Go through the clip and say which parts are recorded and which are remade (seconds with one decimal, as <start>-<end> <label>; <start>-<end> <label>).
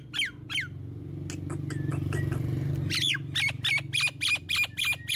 0.0-5.2 recorded